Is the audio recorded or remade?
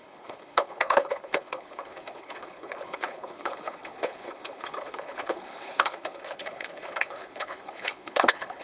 remade